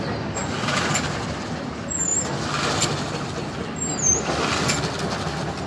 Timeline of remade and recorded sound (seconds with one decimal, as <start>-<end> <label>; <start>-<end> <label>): 0.0-5.7 recorded